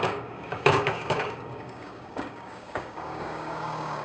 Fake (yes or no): yes